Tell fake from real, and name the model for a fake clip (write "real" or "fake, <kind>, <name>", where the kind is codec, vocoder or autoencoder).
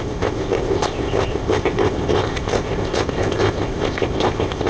fake, codec, ZipCodec